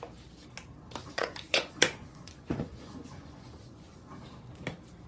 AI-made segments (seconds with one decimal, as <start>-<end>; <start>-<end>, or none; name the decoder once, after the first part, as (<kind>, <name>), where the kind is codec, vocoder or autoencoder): 1.0-4.1 (vocoder, Vocos)